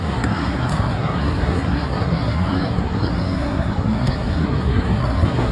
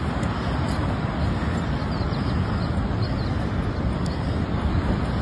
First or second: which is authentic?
second